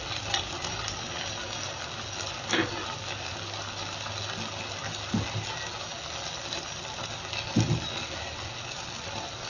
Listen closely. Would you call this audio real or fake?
real